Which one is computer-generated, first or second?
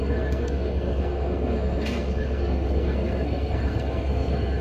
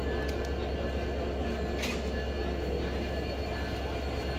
first